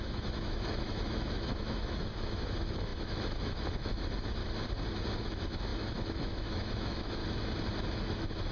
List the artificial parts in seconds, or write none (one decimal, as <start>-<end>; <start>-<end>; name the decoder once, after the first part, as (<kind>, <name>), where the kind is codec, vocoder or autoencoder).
0.0-4.4 (autoencoder, DAC-VAE); 5.2-7.2; 8.0-8.5